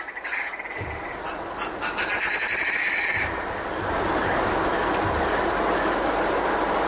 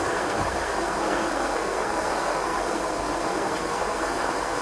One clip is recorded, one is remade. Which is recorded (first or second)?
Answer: first